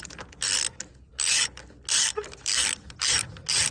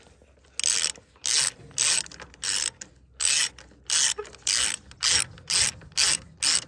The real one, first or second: second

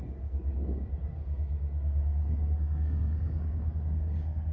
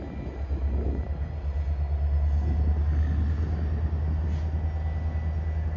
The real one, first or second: second